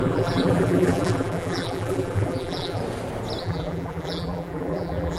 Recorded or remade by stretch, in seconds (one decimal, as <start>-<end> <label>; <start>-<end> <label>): 0.0-2.8 remade; 2.8-3.4 recorded; 3.4-5.2 remade